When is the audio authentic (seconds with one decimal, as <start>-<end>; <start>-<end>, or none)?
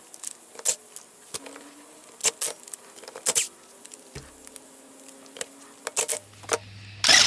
0.0-7.3